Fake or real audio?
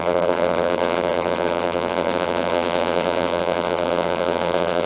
fake